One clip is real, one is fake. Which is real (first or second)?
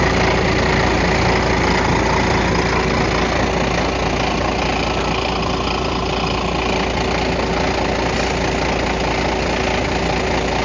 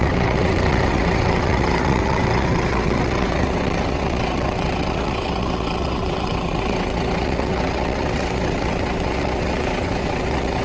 first